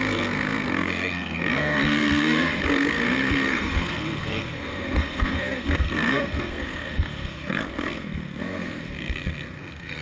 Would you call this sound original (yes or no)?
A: no